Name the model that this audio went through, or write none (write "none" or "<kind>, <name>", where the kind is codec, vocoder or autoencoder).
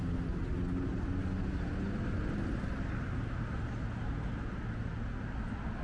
none